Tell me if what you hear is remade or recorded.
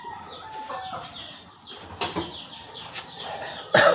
remade